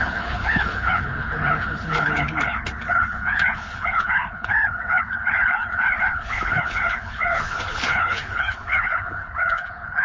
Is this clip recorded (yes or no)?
no